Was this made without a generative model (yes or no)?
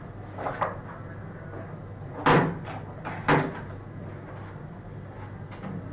yes